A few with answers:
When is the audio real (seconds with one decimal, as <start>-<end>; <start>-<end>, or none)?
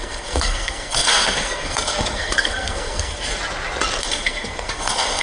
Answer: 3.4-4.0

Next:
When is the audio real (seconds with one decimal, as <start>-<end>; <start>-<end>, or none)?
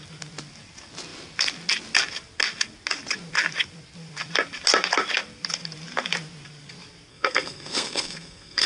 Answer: 0.0-7.1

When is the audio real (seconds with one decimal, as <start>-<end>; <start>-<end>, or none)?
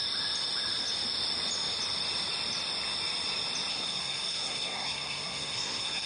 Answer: 0.0-3.7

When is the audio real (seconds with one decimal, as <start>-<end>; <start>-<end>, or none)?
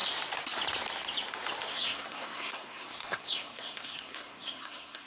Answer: 0.0-1.7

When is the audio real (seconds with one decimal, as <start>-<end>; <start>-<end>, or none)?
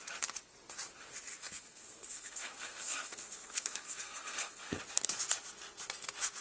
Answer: 0.0-1.3; 4.8-6.4